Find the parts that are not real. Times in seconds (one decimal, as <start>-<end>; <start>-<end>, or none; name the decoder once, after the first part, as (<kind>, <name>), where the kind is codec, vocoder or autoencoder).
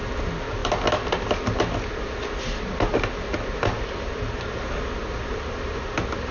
none